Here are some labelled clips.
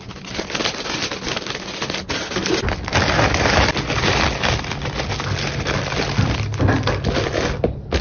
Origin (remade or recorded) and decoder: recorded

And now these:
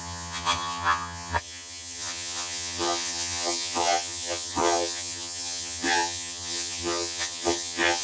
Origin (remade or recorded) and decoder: remade, vocoder, HiFi-GAN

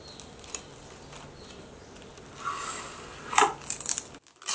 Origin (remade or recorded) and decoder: recorded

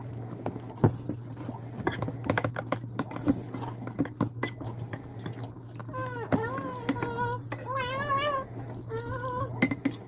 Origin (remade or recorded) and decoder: recorded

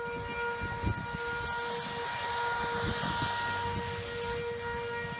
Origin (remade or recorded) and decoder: recorded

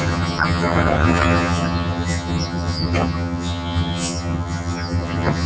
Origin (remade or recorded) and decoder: remade, vocoder, HiFi-GAN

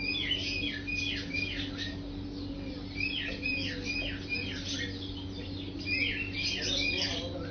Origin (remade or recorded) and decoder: recorded